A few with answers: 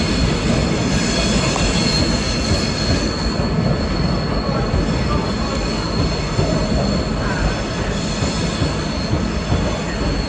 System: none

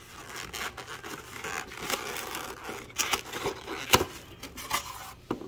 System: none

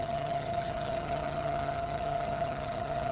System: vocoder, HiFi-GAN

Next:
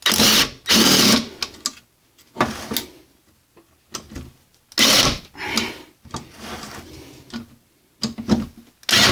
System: none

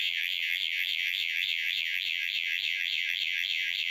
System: vocoder, BigVGAN v2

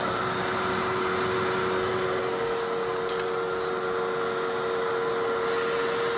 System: none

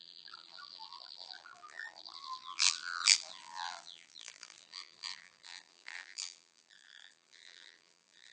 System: vocoder, BigVGAN v2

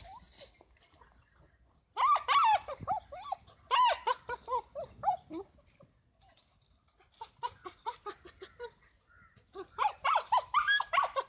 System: none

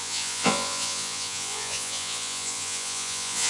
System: vocoder, Vocos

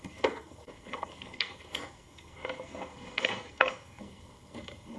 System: codec, SNAC